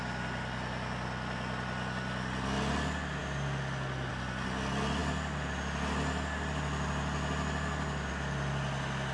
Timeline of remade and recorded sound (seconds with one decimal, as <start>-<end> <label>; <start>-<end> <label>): 0.0-9.1 recorded